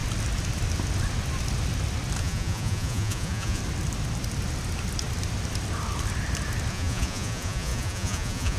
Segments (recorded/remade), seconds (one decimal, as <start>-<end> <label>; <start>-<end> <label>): 0.0-2.2 recorded; 2.2-3.6 remade; 3.6-6.7 recorded; 6.7-8.6 remade